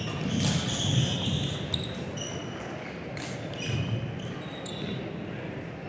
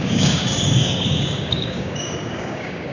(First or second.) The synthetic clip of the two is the second